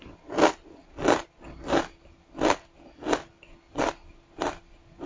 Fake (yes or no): no